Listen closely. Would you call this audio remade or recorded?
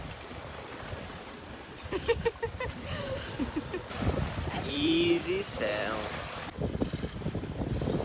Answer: remade